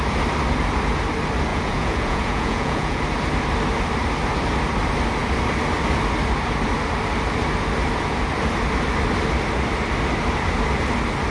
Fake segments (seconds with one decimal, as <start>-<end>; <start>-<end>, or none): 1.5-3.0